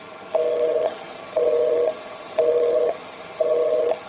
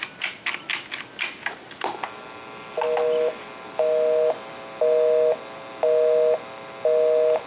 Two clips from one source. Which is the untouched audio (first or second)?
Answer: second